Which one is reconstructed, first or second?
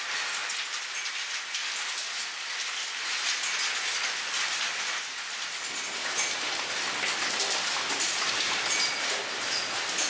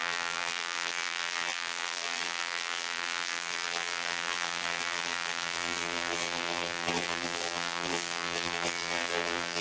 second